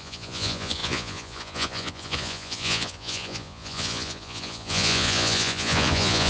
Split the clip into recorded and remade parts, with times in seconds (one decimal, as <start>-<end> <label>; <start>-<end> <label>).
0.0-6.3 remade